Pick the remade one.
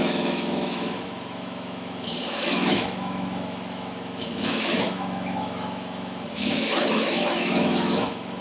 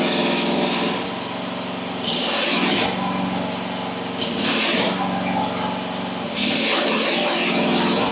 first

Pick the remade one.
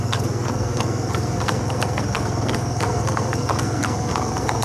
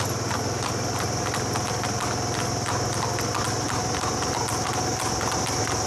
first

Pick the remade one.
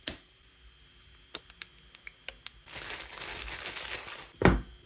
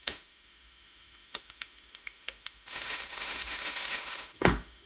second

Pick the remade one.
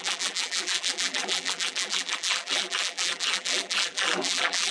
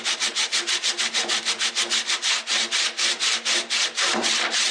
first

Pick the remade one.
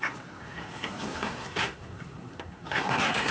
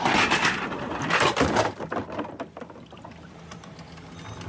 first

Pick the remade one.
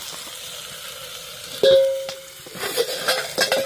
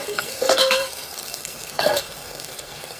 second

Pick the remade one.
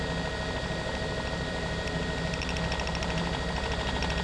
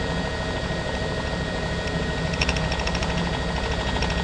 second